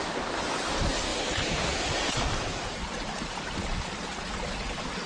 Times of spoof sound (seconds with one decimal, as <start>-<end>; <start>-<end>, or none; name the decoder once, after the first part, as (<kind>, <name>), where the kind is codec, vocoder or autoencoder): none